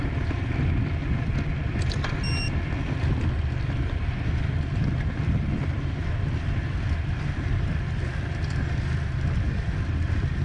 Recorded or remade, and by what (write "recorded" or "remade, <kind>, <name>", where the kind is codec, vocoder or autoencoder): recorded